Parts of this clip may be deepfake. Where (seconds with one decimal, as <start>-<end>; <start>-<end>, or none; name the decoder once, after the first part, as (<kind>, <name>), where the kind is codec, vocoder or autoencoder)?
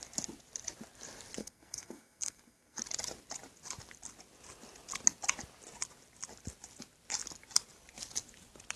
1.4-2.8 (codec, SNAC)